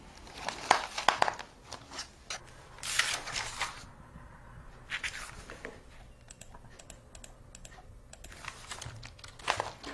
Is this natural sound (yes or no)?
yes